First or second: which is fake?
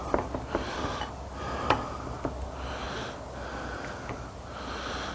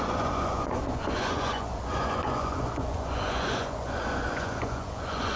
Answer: second